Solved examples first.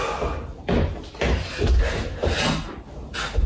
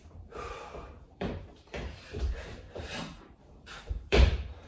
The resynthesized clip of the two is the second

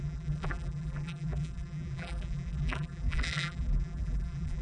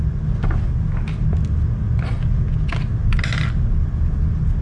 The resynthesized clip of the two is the first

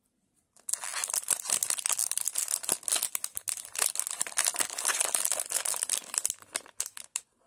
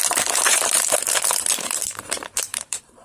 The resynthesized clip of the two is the second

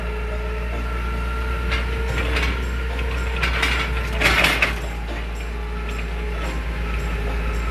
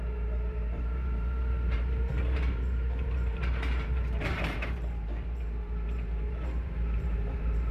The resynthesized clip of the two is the second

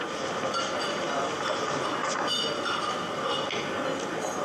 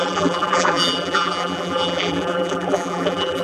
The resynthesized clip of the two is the second